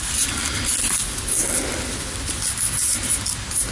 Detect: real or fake real